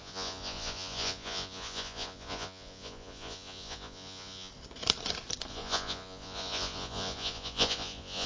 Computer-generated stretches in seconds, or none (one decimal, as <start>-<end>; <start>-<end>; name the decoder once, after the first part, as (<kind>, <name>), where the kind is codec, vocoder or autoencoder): 0.0-4.5 (vocoder, Vocos); 5.5-8.3